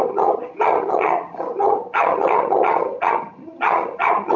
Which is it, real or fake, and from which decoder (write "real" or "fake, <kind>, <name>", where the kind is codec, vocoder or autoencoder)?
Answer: fake, vocoder, HiFi-GAN